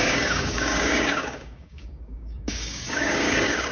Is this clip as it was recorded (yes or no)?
no